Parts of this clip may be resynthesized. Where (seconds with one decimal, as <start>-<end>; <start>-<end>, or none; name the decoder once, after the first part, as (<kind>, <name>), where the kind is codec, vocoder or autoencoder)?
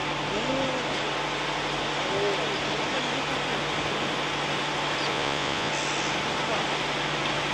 5.1-5.7 (vocoder, Vocos)